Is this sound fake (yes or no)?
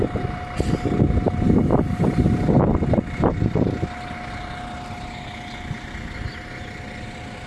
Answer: no